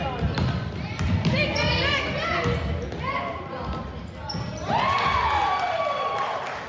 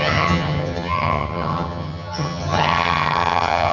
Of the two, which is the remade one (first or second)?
second